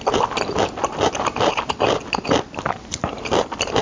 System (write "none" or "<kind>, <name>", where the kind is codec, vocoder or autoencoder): none